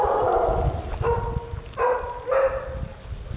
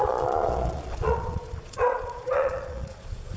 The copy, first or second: second